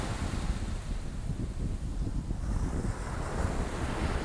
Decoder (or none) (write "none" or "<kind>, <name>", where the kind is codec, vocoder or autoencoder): none